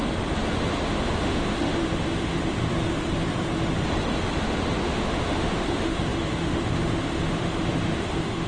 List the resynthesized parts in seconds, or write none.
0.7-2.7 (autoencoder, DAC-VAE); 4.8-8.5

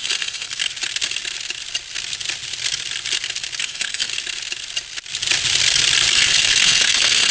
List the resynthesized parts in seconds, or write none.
0.0-0.6 (codec, SNAC); 3.6-4.1; 6.1-7.3

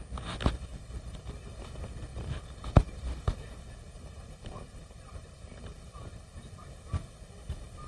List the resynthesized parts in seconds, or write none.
0.7-1.5 (vocoder, BigVGAN v2); 2.1-6.8

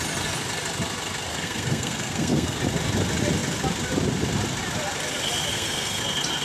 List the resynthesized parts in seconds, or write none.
1.3-2.6 (codec, SNAC); 5.5-6.0

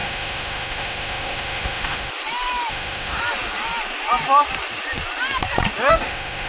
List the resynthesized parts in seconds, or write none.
0.0-2.1 (autoencoder, DAC-VAE); 2.7-3.2; 5.9-6.5

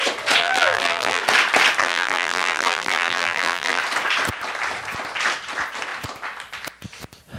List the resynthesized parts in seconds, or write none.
0.4-1.2 (vocoder, BigVGAN v2); 1.8-3.8

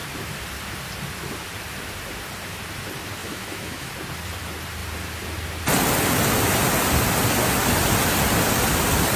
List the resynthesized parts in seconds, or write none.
3.2-3.9 (autoencoder, DAC-VAE)